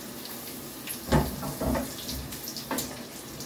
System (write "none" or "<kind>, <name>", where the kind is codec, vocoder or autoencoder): none